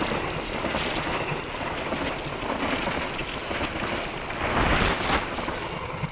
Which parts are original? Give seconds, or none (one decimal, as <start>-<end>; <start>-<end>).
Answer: 0.0-6.1

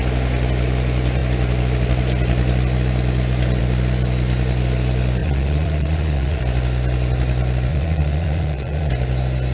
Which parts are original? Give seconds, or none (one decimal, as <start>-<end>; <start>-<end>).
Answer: 0.0-5.2; 6.4-7.7; 8.9-9.5

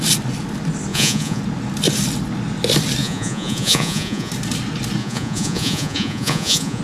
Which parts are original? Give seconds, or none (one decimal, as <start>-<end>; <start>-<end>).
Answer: 0.0-0.9; 1.4-3.0; 4.3-5.0

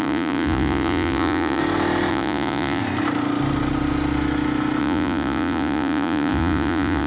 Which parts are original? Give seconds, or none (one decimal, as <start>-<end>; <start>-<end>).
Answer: 1.6-2.1; 2.8-4.8